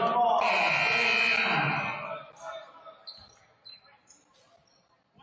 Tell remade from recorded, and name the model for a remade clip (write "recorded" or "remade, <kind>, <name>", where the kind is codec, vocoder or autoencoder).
recorded